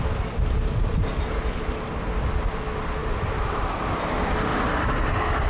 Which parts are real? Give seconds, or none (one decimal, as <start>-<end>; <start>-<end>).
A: 0.0-3.0; 3.8-4.5; 5.0-5.5